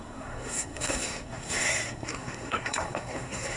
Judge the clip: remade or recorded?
remade